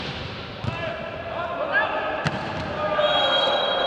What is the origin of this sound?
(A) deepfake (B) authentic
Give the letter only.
B